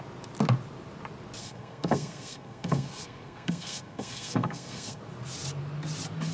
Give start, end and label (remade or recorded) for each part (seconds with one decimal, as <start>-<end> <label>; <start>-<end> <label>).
0.0-1.4 recorded; 1.4-5.0 remade; 5.0-6.3 recorded